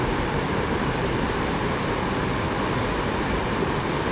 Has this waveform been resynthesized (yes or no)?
yes